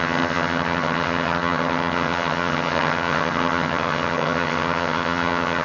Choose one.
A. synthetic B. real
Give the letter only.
A